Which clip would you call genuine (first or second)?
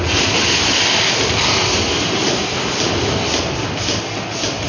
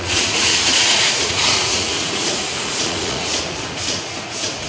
first